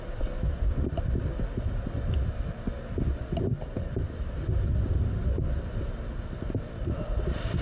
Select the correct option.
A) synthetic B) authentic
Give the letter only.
B